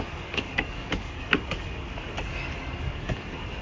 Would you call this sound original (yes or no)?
no